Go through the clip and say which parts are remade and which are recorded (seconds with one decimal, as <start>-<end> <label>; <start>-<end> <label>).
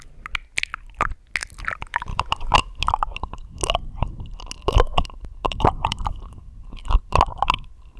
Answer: 0.0-1.4 recorded; 1.4-2.2 remade; 2.2-5.4 recorded; 5.4-6.1 remade; 6.1-8.0 recorded